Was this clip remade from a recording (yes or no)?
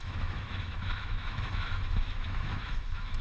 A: yes